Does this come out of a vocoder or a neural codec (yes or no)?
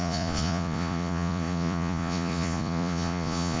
yes